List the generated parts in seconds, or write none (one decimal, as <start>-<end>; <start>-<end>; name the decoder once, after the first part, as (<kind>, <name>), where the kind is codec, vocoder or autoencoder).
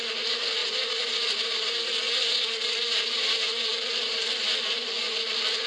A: none